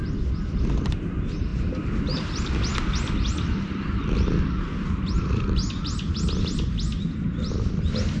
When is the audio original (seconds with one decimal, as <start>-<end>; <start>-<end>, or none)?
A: 0.0-8.2